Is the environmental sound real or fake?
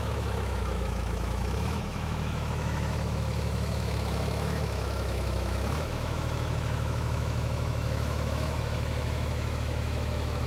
fake